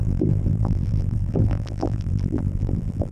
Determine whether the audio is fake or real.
fake